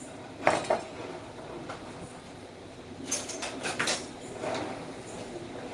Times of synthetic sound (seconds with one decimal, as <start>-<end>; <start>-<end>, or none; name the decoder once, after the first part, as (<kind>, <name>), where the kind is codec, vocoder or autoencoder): 1.6-5.0 (vocoder, BigVGAN v2)